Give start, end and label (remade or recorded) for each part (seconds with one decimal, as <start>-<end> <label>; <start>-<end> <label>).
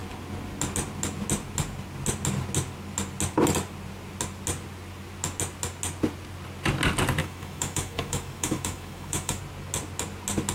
0.0-7.2 recorded; 7.2-9.4 remade; 9.4-10.5 recorded